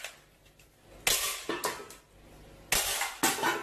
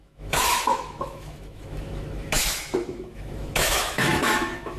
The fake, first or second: second